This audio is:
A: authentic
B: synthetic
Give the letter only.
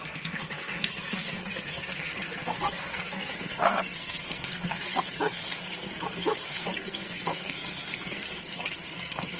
B